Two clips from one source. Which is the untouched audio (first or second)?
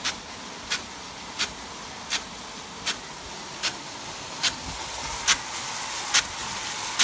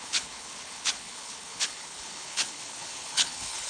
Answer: first